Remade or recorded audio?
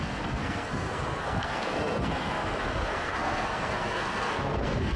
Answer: remade